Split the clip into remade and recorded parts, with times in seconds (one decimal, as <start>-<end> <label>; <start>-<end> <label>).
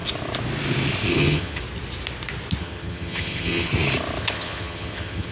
0.0-1.1 recorded; 1.1-1.6 remade; 1.6-2.6 recorded; 2.6-3.7 remade; 3.7-4.2 recorded; 4.2-5.3 remade